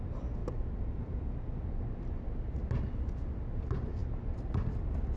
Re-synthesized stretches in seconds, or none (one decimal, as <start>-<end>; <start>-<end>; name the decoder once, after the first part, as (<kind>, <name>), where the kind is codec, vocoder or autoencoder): 0.4-1.9 (vocoder, BigVGAN v2)